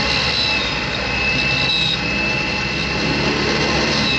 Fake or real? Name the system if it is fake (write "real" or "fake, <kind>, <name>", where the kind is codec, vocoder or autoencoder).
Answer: real